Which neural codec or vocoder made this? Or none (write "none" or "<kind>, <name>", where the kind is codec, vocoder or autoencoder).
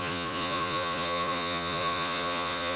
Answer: vocoder, Vocos